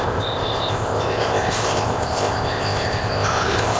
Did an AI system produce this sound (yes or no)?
yes